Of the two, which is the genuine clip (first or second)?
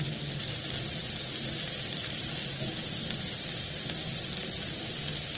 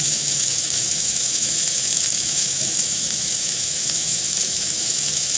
first